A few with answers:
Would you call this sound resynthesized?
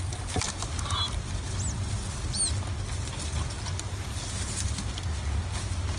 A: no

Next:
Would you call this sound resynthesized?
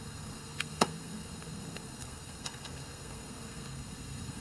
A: yes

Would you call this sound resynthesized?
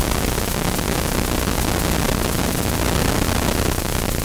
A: no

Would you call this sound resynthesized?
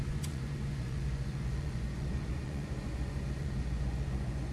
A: yes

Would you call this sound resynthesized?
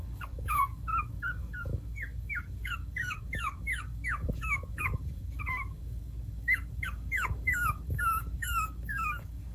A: yes